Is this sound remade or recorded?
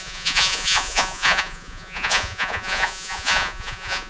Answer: remade